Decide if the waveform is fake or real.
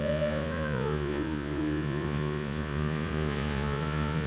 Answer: fake